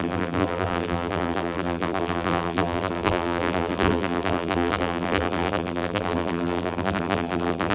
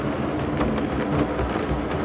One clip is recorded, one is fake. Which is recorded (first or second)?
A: second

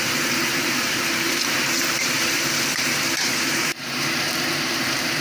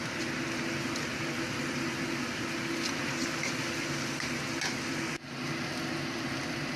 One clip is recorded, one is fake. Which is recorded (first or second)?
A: second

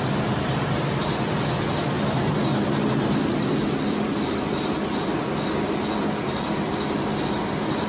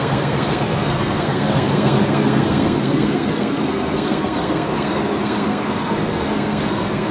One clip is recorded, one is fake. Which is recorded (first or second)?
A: first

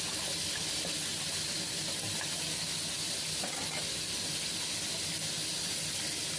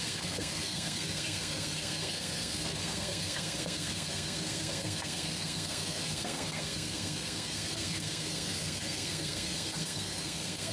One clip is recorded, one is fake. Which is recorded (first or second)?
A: first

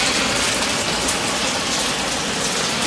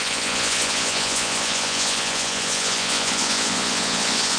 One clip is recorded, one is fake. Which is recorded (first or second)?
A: first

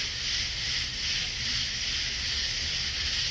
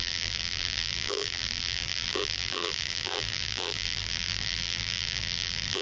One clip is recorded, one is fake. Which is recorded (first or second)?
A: first